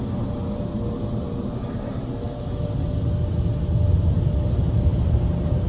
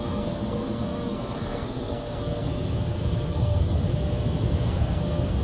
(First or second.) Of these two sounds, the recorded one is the first